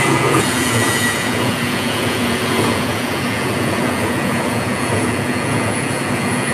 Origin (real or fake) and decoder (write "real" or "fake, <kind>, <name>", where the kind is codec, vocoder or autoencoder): fake, vocoder, Vocos